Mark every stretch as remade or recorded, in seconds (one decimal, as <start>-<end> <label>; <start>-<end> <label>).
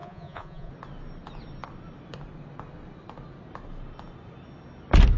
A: 0.0-0.7 remade; 0.7-5.2 recorded